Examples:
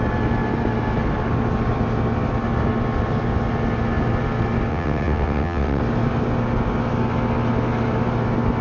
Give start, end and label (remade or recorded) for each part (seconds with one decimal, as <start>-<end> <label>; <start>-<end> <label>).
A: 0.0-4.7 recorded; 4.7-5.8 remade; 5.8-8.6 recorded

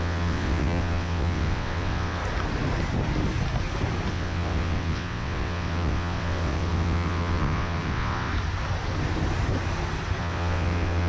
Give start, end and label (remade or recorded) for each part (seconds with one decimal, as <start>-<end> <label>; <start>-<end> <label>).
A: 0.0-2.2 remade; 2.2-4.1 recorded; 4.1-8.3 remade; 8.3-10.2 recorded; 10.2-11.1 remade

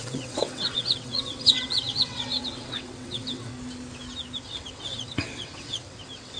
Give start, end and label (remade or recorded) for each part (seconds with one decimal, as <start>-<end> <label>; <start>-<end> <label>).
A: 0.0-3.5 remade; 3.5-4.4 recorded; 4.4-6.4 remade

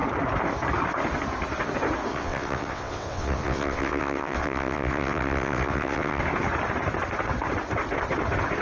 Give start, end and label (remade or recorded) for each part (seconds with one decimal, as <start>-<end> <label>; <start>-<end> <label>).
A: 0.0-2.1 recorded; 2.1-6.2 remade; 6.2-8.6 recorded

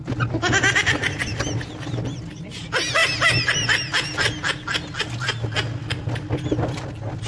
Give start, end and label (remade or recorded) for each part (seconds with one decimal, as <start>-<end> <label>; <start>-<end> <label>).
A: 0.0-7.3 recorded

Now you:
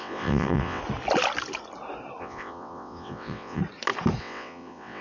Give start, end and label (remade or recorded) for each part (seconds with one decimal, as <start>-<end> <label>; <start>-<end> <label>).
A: 0.0-0.8 remade; 0.8-2.2 recorded; 2.2-3.6 remade; 3.6-4.2 recorded; 4.2-5.0 remade

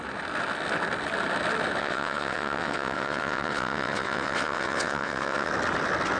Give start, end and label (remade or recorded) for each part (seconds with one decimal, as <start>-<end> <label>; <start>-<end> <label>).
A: 0.0-1.8 recorded; 1.8-5.5 remade; 5.5-6.2 recorded